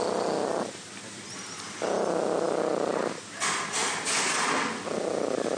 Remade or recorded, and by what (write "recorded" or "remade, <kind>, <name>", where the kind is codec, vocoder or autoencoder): recorded